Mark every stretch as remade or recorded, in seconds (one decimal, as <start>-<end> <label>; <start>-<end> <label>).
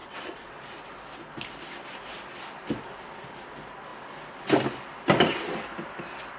0.0-0.6 remade; 0.6-6.4 recorded